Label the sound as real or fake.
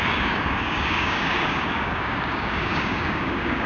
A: fake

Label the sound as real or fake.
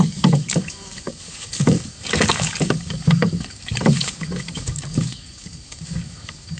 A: fake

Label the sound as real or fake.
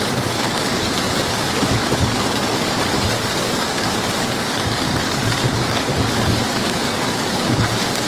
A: fake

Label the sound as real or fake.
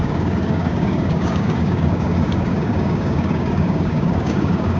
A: fake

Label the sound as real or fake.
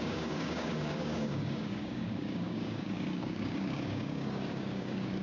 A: fake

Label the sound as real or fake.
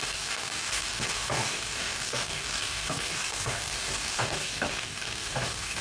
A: fake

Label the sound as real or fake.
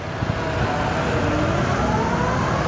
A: real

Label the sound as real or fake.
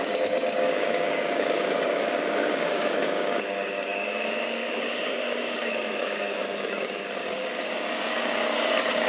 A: fake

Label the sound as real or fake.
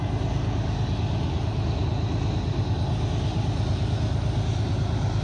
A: real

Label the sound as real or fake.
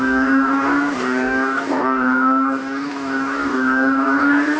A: fake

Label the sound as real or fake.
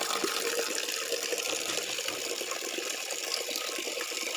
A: real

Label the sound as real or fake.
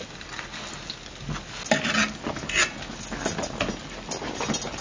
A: real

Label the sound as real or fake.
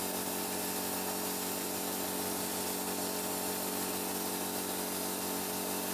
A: real